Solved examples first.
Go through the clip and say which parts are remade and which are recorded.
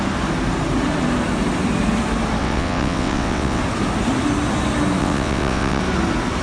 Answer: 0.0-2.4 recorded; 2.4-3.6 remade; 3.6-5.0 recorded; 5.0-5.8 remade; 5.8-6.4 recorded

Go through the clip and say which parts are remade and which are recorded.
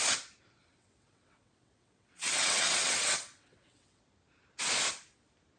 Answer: 0.0-0.6 recorded; 0.6-4.0 remade; 4.0-5.6 recorded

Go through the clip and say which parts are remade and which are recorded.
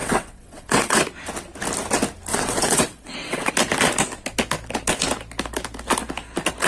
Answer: 0.0-1.0 remade; 1.0-2.3 recorded; 2.3-3.5 remade; 3.5-6.7 recorded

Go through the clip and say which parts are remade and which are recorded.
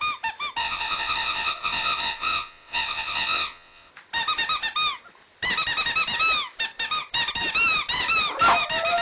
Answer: 0.0-0.6 recorded; 0.6-3.9 remade; 3.9-9.0 recorded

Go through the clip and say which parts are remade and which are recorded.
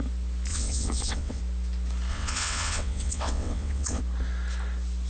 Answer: 0.0-0.5 recorded; 0.5-1.4 remade; 1.4-2.1 recorded; 2.1-4.0 remade; 4.0-5.1 recorded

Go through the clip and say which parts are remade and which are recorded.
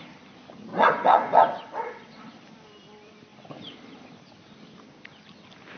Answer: 0.0-0.7 recorded; 0.7-2.3 remade; 2.3-5.8 recorded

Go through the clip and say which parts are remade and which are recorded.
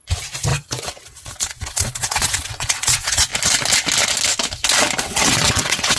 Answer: 0.0-3.3 remade; 3.3-5.0 recorded; 5.0-6.0 remade